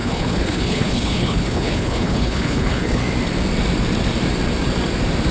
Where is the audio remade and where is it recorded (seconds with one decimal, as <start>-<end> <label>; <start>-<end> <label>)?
0.0-3.0 remade; 3.0-5.3 recorded